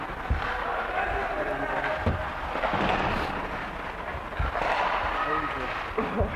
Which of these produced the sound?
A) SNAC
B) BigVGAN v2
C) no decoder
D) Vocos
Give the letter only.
C